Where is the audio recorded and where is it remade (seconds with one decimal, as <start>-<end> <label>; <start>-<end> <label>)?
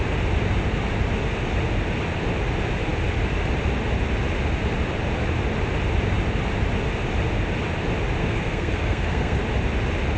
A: 0.0-8.2 recorded; 8.2-9.4 remade; 9.4-10.2 recorded